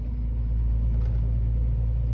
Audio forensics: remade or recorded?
recorded